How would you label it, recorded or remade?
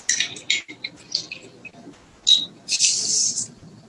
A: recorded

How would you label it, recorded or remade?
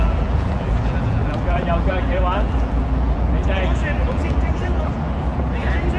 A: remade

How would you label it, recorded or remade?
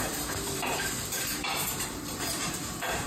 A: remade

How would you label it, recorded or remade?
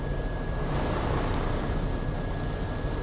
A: remade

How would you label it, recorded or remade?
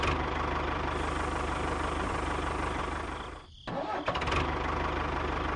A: recorded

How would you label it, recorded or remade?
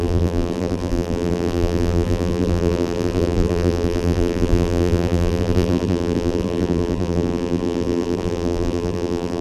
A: remade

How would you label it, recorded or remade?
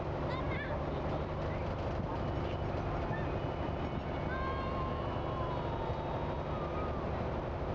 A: recorded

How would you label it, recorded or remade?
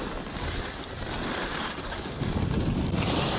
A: recorded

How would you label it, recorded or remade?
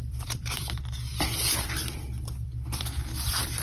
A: remade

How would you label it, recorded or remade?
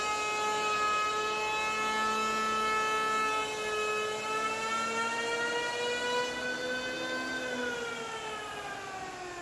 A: recorded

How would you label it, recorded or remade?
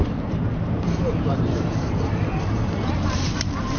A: remade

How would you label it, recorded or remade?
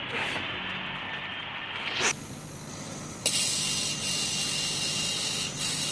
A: recorded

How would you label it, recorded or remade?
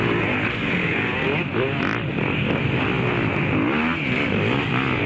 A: recorded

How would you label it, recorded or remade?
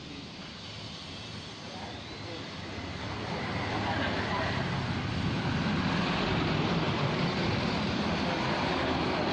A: remade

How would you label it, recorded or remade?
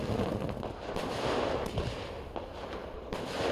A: recorded